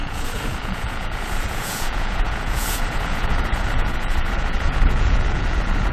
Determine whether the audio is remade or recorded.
remade